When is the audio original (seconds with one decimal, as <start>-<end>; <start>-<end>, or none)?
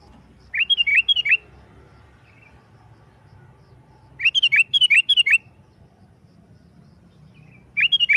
0.0-8.2